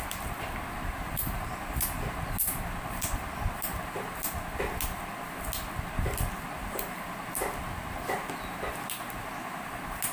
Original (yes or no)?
yes